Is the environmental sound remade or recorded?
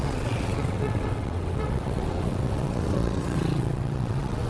remade